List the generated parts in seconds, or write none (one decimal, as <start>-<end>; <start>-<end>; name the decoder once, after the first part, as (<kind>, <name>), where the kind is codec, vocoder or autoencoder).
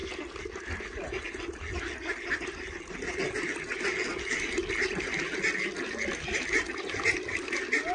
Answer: none